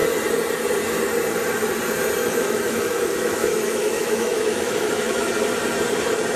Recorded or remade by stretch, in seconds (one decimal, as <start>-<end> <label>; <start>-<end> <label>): 0.0-2.2 recorded; 2.2-5.3 remade; 5.3-6.4 recorded